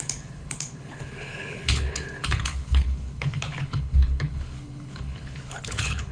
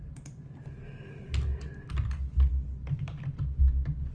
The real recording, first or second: second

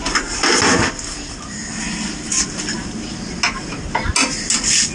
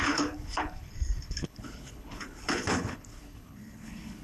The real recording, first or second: first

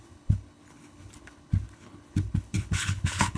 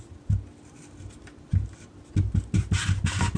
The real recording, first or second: second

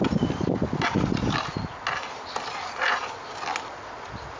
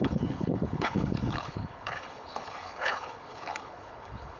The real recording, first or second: first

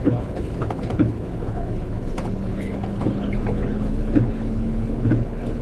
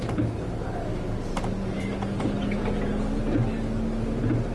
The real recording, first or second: second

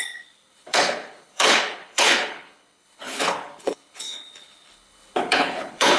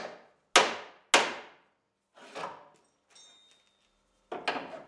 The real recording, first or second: second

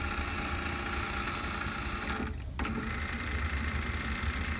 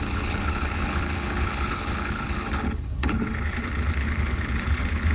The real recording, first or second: first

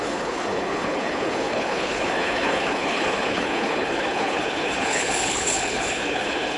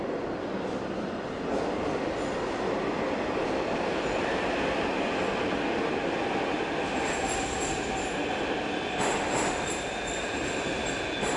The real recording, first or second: second